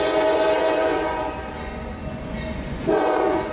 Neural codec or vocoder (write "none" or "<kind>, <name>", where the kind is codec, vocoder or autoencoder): vocoder, Vocos